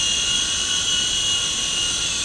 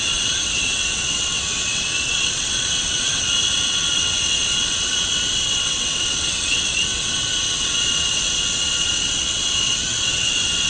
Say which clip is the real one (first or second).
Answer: first